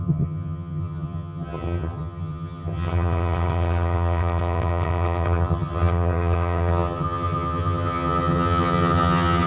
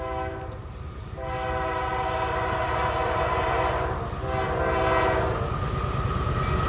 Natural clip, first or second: second